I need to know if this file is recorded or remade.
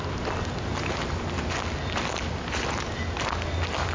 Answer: recorded